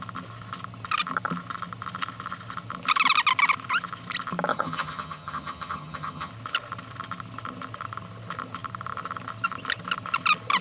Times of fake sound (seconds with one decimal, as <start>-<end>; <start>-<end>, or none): 4.5-6.3